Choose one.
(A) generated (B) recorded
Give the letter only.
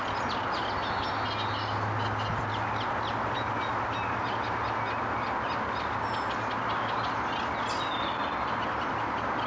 B